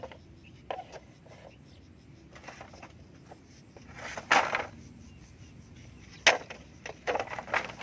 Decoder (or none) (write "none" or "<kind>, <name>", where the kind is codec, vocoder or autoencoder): none